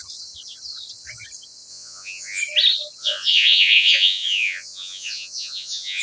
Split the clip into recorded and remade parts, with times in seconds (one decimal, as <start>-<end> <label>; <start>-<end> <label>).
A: 0.0-1.7 recorded; 1.7-2.4 remade; 2.4-3.0 recorded; 3.0-6.0 remade